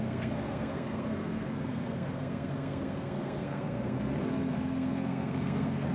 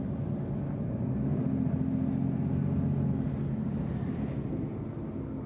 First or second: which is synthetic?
first